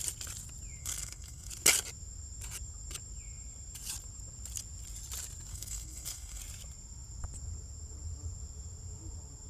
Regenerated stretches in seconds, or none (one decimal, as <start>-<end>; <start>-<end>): 0.8-1.5; 5.5-6.4